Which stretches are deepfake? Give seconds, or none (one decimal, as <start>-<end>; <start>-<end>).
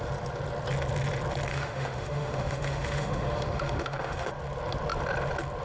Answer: 1.5-4.3